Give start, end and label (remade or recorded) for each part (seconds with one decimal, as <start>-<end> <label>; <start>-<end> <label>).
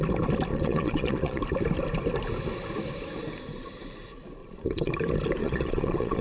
0.0-0.5 recorded; 0.5-1.4 remade; 1.4-4.4 recorded; 4.4-4.9 remade; 4.9-5.4 recorded; 5.4-6.2 remade